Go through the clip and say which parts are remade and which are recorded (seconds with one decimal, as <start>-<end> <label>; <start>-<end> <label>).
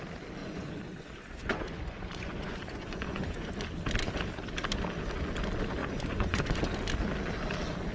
0.0-0.4 recorded; 0.4-3.5 remade; 3.5-5.8 recorded; 5.8-6.6 remade; 6.6-7.9 recorded